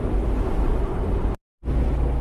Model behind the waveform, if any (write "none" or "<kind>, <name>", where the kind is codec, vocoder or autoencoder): none